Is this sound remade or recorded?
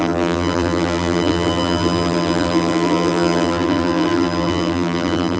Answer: remade